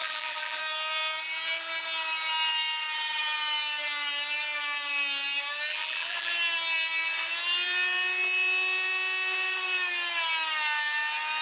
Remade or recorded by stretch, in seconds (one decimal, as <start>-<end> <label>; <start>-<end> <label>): 0.0-0.6 remade; 0.6-5.7 recorded; 5.7-6.3 remade; 6.3-11.4 recorded